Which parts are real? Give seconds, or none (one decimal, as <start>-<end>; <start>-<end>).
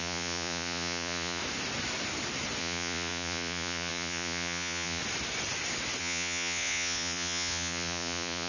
1.4-2.6; 5.0-6.0